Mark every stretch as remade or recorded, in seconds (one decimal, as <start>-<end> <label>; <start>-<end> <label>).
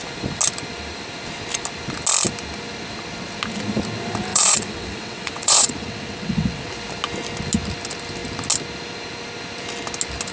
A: 0.0-4.3 recorded; 4.3-6.7 remade; 6.7-10.3 recorded